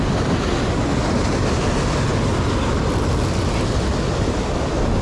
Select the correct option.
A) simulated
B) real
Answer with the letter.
B